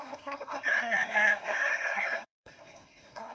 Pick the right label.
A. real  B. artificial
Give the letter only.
B